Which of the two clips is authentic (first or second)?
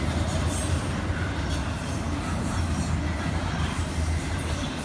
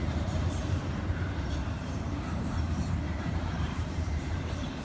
first